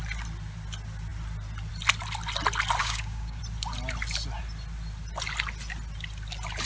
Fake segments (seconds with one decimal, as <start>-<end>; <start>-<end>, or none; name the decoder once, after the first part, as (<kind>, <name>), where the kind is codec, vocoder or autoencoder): 2.8-3.4 (codec, DAC)